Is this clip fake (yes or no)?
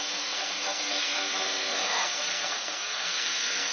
yes